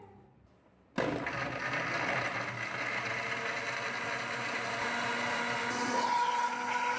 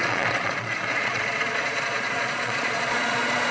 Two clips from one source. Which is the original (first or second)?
first